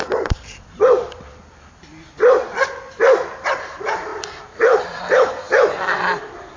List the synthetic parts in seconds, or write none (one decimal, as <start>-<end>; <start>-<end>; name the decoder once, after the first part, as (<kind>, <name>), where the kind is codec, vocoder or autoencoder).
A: 0.0-1.9 (vocoder, BigVGAN v2); 3.4-6.6